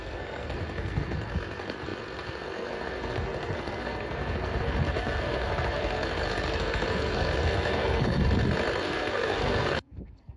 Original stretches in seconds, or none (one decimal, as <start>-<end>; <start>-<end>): 8.2-8.8